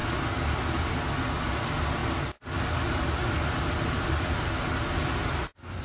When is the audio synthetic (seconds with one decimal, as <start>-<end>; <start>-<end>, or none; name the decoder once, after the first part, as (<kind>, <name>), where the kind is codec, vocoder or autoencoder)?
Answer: none